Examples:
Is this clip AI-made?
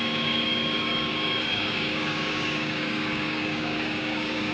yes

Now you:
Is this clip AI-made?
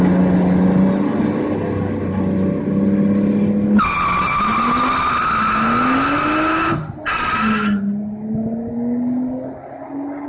no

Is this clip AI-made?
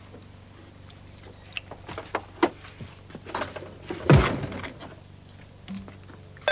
no